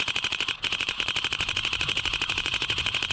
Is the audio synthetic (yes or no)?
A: yes